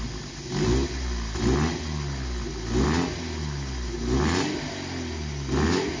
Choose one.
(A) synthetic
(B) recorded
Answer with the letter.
B